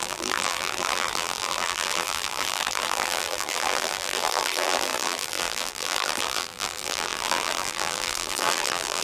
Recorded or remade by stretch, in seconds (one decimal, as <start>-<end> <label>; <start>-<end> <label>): 0.0-9.0 remade